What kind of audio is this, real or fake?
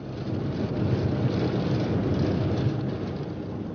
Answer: real